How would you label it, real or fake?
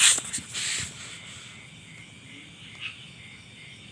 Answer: real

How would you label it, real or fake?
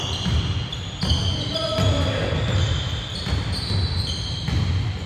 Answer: real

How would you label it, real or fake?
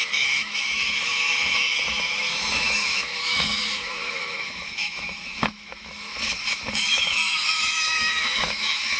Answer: fake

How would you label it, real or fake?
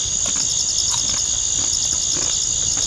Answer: real